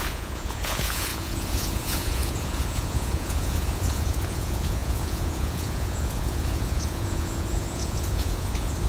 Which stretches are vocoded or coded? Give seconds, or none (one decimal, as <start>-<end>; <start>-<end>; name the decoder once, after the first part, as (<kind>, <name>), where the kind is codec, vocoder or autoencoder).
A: 0.0-8.9 (vocoder, Vocos)